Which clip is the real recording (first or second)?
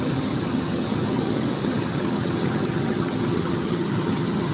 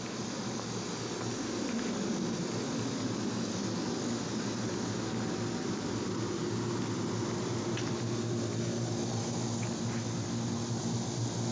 second